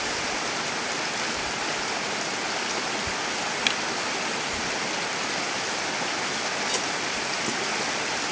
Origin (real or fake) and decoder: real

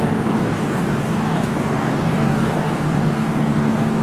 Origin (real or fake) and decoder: fake, codec, DAC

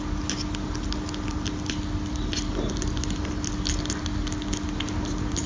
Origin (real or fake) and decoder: real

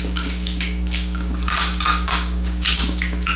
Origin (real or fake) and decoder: fake, codec, DAC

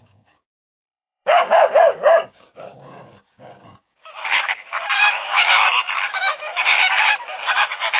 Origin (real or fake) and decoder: fake, codec, DAC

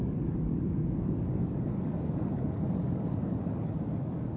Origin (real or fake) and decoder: fake, codec, DAC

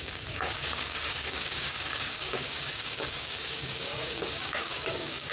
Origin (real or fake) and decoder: fake, codec, DAC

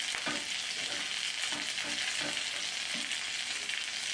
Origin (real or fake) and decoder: real